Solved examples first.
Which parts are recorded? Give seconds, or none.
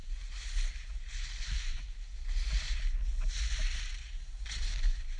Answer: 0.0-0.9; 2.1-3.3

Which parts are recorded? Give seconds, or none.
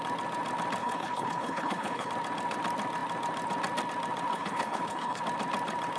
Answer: 0.0-0.8; 2.1-4.3; 5.2-6.0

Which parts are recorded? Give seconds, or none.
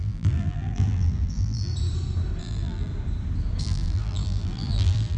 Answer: 1.7-2.4; 2.9-3.6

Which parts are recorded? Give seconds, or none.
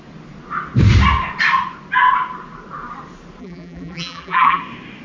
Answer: 0.0-3.4; 4.6-5.0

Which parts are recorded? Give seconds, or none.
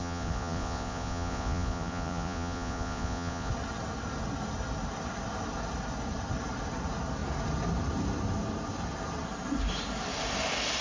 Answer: 3.5-10.8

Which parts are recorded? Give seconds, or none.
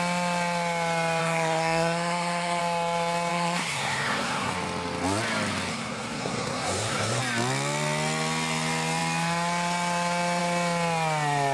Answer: 0.0-1.2; 2.6-3.3; 4.5-5.7; 7.2-11.5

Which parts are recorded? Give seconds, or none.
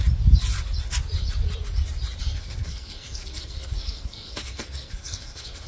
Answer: 0.0-2.2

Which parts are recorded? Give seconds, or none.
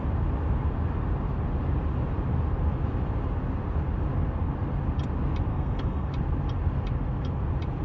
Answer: 0.0-5.5; 6.1-7.8